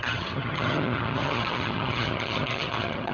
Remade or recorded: remade